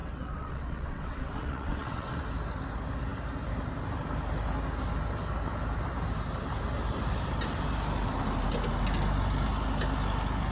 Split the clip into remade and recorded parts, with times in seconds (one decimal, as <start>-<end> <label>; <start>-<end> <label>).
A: 0.0-2.2 remade; 2.2-10.5 recorded